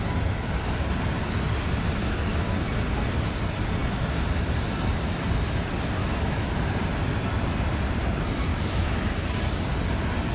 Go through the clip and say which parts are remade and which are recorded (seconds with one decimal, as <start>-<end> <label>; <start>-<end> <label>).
0.0-6.0 recorded; 6.0-6.6 remade; 6.6-8.5 recorded; 8.5-9.0 remade; 9.0-10.3 recorded